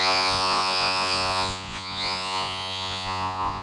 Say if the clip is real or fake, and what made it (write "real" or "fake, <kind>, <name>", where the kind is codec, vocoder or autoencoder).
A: fake, vocoder, Vocos